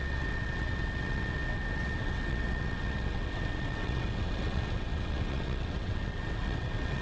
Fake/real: fake